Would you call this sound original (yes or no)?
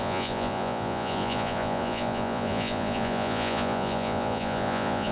no